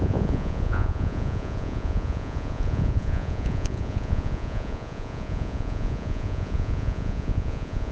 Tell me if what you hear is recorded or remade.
remade